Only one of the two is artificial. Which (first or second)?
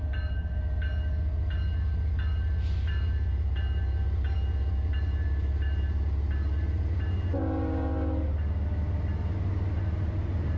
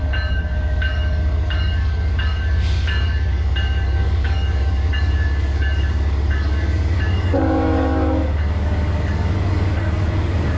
second